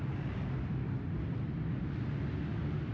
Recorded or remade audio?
recorded